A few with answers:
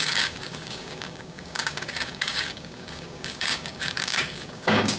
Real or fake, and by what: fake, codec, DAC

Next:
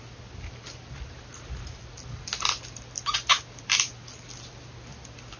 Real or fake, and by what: real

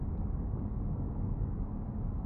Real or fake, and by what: fake, codec, DAC